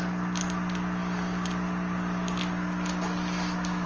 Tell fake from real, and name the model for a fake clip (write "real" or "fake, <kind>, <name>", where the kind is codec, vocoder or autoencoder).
real